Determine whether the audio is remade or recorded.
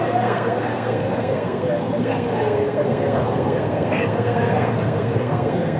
remade